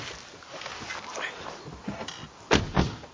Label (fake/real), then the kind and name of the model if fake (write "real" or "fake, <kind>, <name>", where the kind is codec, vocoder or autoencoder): real